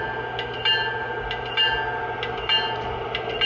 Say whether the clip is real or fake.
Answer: real